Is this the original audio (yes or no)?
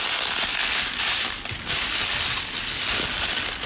yes